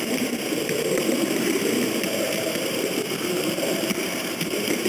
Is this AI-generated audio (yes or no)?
yes